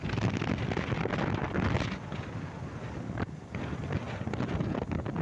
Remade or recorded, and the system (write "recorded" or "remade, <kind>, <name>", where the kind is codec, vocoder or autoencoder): recorded